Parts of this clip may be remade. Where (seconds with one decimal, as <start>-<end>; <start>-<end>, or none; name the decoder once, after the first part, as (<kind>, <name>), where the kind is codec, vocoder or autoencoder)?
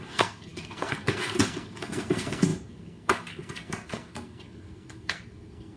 0.0-5.8 (codec, SNAC)